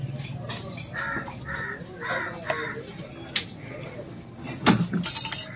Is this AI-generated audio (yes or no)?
no